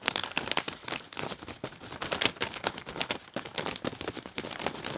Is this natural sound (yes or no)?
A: yes